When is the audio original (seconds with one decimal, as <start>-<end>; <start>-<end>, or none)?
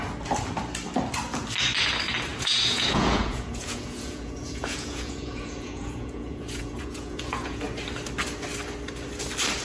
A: 0.0-2.3; 7.6-9.6